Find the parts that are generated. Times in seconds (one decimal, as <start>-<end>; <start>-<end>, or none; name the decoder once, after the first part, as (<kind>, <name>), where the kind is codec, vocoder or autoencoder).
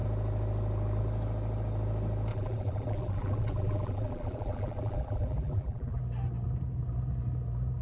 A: 2.3-6.0 (vocoder, BigVGAN v2)